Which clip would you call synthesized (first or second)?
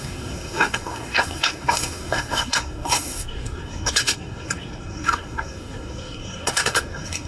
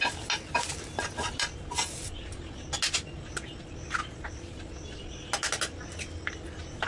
first